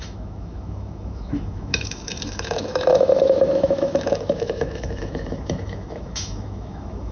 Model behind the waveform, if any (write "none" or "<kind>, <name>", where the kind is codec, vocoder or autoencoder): autoencoder, DAC-VAE